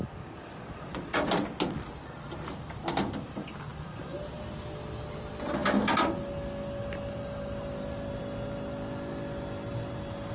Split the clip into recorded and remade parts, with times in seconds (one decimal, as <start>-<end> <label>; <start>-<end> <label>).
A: 0.0-10.3 recorded